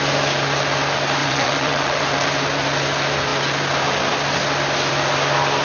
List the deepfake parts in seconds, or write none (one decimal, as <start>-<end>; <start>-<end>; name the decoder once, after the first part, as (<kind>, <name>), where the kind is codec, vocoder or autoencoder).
1.2-2.0 (vocoder, WaveNeXt)